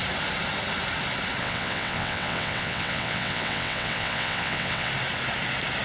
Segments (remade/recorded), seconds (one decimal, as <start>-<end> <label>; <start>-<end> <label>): 0.0-1.4 recorded; 1.4-4.9 remade; 4.9-5.8 recorded